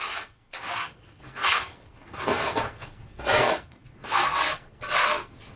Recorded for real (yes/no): no